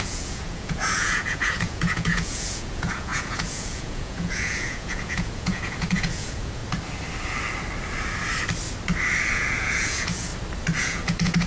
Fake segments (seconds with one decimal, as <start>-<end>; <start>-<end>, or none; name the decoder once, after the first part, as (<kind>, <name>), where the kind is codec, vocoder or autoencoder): 0.0-6.6 (vocoder, Vocos); 9.3-10.3; 10.8-11.5